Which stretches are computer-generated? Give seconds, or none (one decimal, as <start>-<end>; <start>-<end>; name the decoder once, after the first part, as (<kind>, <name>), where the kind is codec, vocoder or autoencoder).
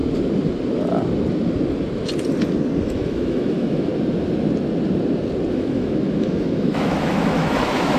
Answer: 2.8-3.9 (autoencoder, DAC-VAE); 5.5-8.0